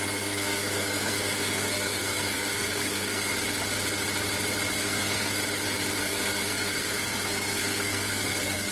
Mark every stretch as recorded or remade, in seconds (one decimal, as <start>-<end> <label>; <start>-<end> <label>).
0.0-3.3 remade; 3.3-4.7 recorded; 4.7-5.4 remade; 5.4-6.0 recorded; 6.0-8.7 remade